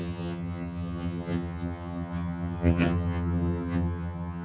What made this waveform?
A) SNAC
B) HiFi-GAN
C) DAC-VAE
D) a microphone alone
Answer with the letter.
B